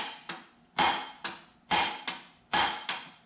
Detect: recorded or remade recorded